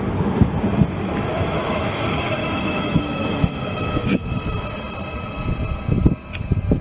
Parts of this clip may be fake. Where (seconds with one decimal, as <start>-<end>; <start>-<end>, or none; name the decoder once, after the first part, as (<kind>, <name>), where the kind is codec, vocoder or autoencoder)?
1.3-4.2 (autoencoder, DAC-VAE)